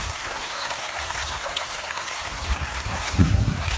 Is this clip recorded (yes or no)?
no